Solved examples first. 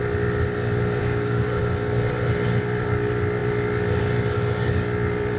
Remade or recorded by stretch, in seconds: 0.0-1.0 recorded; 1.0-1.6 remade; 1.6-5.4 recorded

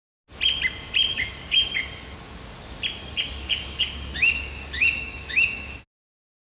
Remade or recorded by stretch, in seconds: 0.0-1.1 recorded; 1.1-1.8 remade; 1.8-3.0 recorded; 3.0-5.7 remade; 5.7-6.5 recorded

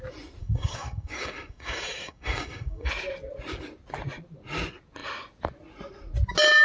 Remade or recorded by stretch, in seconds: 0.0-0.4 recorded; 0.4-2.9 remade; 2.9-6.6 recorded

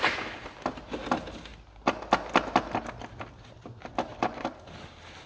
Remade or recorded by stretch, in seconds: 0.0-5.3 recorded

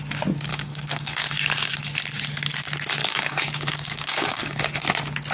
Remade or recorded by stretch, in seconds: 0.0-0.5 recorded; 0.5-1.7 remade; 1.7-3.0 recorded; 3.0-4.8 remade; 4.8-5.3 recorded

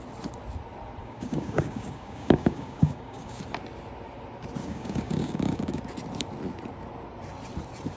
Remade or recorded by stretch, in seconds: 0.0-1.0 recorded; 1.0-3.4 remade; 3.4-4.6 recorded; 4.6-5.8 remade; 5.8-8.0 recorded

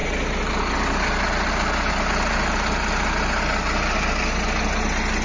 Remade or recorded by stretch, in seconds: 0.0-5.2 recorded